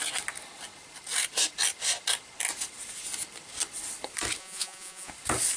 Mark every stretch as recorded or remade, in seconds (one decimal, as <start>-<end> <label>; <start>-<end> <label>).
0.0-4.4 recorded; 4.4-5.1 remade; 5.1-5.6 recorded